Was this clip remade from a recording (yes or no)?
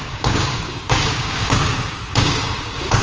yes